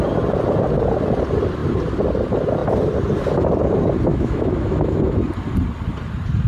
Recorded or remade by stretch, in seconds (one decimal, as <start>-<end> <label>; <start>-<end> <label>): 0.0-4.1 recorded; 4.1-5.0 remade; 5.0-6.5 recorded